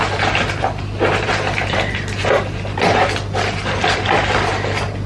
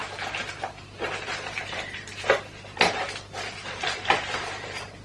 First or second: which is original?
first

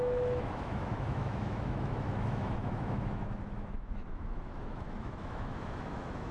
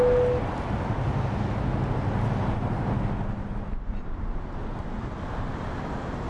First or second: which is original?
second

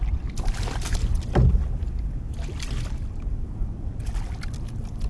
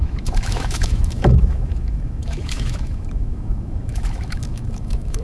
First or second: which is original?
first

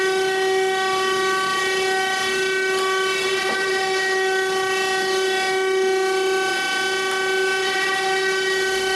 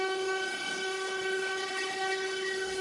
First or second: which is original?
first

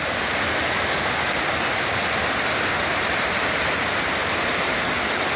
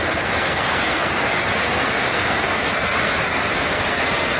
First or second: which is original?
first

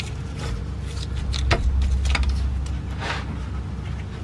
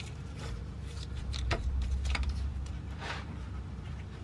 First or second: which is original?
first